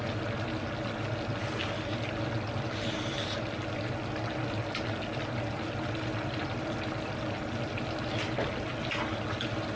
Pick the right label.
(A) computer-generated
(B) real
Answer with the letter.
B